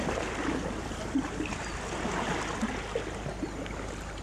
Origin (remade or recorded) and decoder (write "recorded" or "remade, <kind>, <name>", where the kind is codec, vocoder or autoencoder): recorded